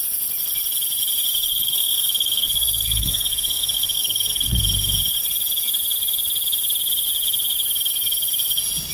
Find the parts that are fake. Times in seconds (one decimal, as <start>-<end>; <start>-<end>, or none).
1.5-4.6